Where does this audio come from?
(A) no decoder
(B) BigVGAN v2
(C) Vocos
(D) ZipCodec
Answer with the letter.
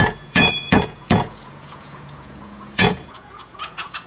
C